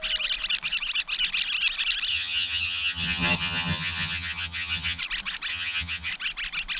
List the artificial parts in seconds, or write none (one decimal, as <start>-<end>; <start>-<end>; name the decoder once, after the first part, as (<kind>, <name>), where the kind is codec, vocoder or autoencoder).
2.1-5.0 (vocoder, HiFi-GAN); 5.5-6.1